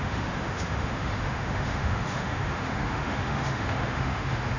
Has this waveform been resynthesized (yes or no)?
yes